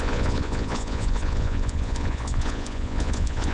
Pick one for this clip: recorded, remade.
remade